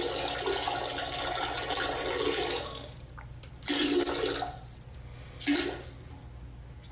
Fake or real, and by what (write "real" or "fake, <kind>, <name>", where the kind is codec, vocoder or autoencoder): real